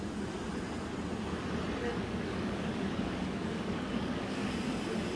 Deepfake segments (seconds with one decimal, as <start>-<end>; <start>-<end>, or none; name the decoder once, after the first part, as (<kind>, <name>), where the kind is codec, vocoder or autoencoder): 1.8-4.5 (codec, DAC)